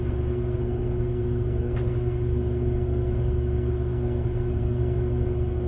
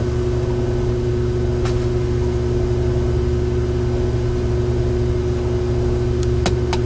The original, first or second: second